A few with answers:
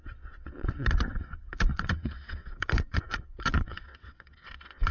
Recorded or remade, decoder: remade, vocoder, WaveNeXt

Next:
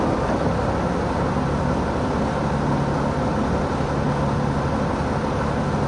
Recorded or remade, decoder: recorded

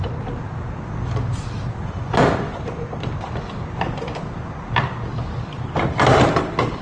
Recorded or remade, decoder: recorded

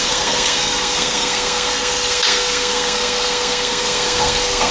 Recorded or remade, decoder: remade, codec, SNAC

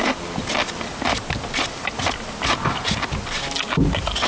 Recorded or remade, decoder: recorded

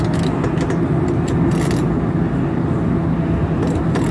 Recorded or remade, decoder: recorded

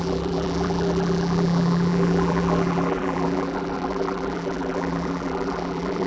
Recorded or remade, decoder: remade, vocoder, BigVGAN v2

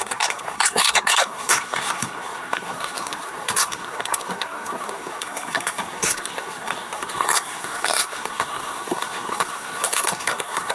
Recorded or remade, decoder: remade, codec, SNAC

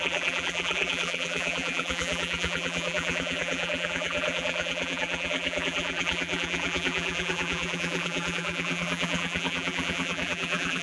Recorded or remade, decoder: remade, vocoder, BigVGAN v2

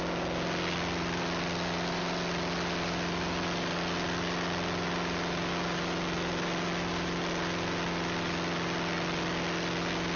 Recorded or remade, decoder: recorded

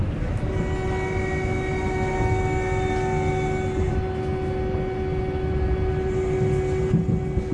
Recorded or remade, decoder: recorded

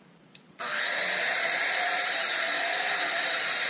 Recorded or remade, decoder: remade, vocoder, BigVGAN v2